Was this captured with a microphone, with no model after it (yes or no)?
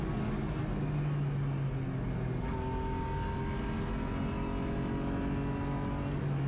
yes